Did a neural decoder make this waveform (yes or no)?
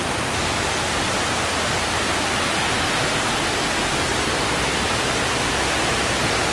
no